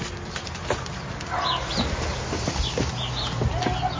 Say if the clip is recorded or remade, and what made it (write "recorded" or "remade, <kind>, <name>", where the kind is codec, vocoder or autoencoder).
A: recorded